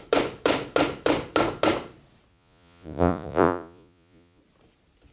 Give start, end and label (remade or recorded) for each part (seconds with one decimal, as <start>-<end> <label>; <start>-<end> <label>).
0.0-2.3 recorded; 2.3-4.4 remade; 4.4-5.1 recorded